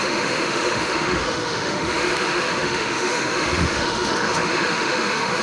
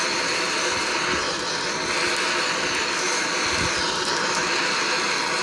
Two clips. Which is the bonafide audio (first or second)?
second